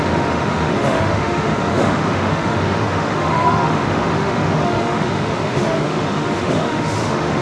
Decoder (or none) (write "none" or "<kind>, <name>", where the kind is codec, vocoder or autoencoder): autoencoder, DAC-VAE